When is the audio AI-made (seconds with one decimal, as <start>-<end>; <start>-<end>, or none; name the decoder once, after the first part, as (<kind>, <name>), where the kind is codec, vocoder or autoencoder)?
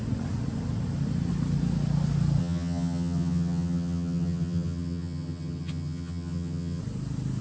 2.4-6.8 (vocoder, HiFi-GAN)